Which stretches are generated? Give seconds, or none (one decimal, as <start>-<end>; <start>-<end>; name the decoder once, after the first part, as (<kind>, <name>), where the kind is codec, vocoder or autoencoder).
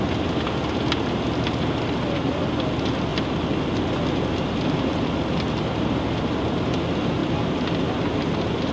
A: none